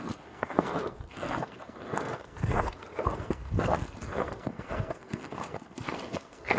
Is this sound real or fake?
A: fake